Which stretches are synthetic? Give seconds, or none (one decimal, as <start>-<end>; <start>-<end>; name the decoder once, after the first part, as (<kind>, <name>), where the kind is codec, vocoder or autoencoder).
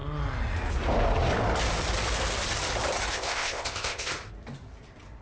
3.1-4.1 (codec, ZipCodec)